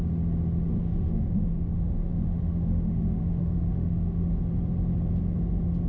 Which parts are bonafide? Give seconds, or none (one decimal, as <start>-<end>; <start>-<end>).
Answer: 0.0-0.8; 4.3-5.9